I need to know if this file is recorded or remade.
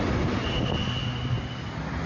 recorded